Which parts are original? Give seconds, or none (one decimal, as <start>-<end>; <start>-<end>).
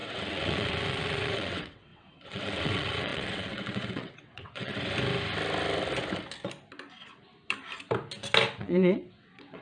4.7-8.5